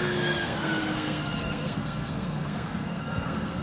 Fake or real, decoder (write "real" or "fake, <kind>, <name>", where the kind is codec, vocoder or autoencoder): fake, codec, SNAC